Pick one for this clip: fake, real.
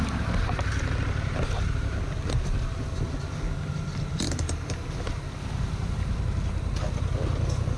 real